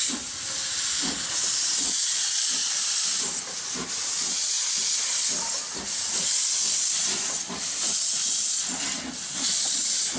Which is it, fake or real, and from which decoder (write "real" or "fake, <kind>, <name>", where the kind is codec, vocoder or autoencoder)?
real